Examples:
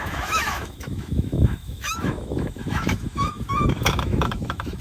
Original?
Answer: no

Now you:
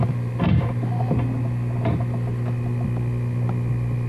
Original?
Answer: yes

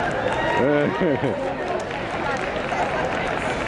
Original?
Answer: yes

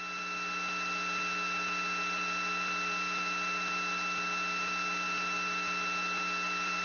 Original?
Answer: yes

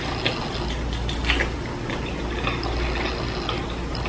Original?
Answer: yes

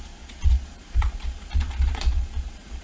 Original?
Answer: no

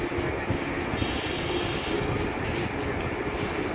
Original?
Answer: yes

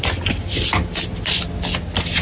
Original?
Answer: yes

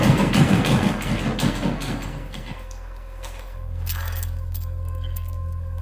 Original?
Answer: no